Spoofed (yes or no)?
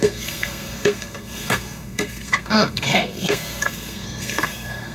yes